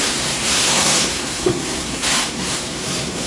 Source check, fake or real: fake